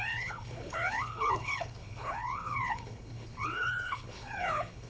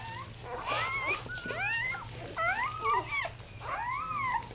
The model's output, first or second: first